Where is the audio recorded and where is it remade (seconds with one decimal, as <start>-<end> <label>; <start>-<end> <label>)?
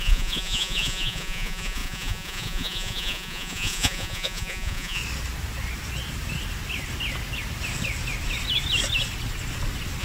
0.0-5.0 remade; 5.0-10.0 recorded